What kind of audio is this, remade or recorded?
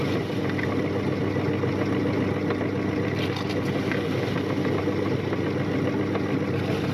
recorded